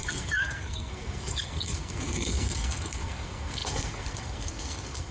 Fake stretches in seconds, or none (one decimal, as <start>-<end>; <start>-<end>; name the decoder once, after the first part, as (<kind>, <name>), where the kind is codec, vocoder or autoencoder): 0.0-5.1 (codec, SNAC)